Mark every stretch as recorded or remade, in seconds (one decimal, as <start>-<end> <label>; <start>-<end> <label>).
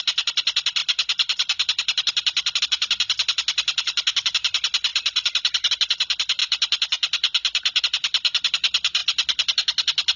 0.0-10.2 recorded